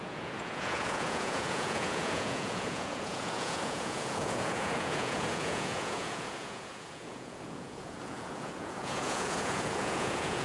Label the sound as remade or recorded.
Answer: remade